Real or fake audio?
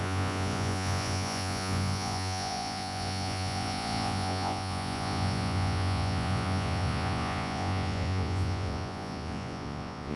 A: fake